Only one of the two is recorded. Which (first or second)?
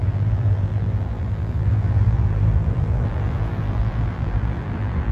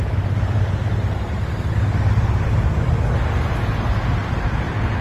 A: second